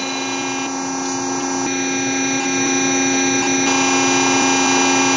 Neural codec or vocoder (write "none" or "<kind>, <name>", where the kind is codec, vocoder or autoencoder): none